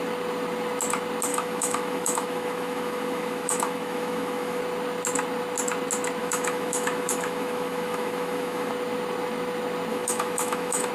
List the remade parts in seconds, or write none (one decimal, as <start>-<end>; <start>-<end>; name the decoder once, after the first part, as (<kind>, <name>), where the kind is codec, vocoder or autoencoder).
1.3-4.6 (autoencoder, DAC-VAE); 6.2-8.7; 9.9-10.9

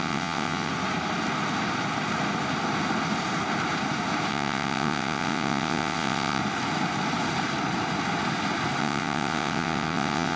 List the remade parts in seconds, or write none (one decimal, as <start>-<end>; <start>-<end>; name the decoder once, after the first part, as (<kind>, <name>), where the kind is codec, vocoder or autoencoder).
0.0-0.7 (vocoder, WaveNeXt); 4.3-6.4; 8.8-10.4

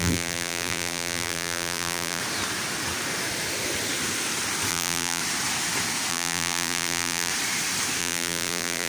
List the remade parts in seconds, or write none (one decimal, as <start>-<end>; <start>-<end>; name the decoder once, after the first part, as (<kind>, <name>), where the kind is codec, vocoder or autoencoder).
0.0-2.2 (vocoder, BigVGAN v2); 4.7-5.2; 6.1-7.3; 8.0-8.9

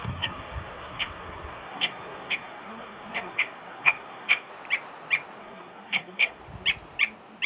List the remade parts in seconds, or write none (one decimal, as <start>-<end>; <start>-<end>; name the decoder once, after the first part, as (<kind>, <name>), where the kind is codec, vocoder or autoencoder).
0.0-4.5 (codec, SNAC); 5.4-6.4